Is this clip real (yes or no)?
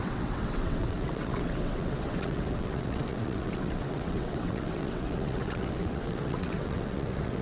no